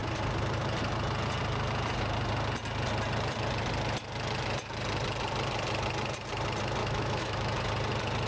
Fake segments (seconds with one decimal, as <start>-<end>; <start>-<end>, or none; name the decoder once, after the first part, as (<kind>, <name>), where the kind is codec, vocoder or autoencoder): 6.8-7.6 (autoencoder, DAC-VAE)